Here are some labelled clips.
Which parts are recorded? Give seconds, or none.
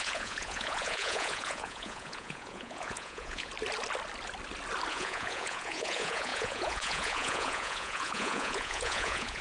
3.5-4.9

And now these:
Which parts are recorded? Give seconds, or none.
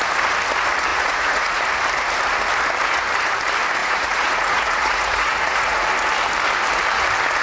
0.0-0.9; 1.6-3.8; 5.9-7.4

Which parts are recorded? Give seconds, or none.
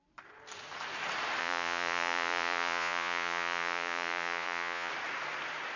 0.0-1.4; 4.9-5.8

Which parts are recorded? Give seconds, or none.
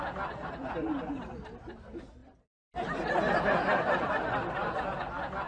0.0-5.5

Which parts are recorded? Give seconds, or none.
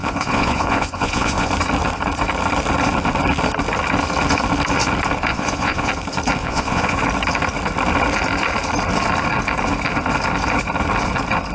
1.5-5.3; 5.9-6.4; 7.0-11.5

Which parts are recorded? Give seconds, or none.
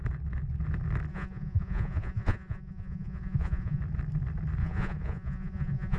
0.0-1.1; 3.8-4.6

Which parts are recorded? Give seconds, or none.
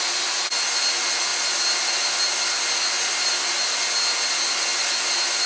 0.0-5.5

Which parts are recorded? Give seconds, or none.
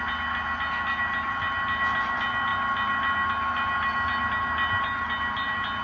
0.0-5.8